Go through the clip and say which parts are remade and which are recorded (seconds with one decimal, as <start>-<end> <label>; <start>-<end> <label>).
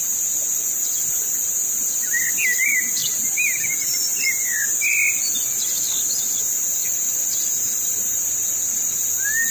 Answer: 0.0-3.0 recorded; 3.0-4.2 remade; 4.2-6.8 recorded; 6.8-9.1 remade; 9.1-9.5 recorded